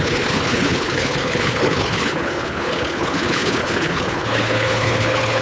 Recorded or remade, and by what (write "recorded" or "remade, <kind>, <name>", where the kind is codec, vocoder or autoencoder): remade, codec, HILCodec